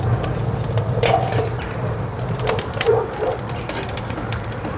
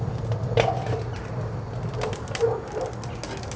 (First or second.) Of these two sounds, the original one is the second